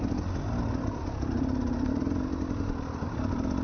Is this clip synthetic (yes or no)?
no